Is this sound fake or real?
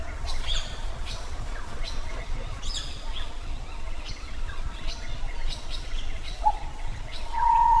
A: fake